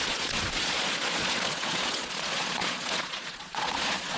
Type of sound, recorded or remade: remade